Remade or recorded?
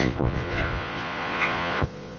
remade